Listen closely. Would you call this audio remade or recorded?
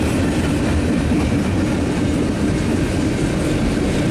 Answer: remade